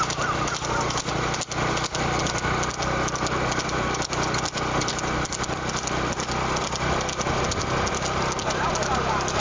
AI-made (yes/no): no